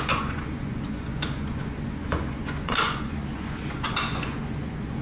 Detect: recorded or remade remade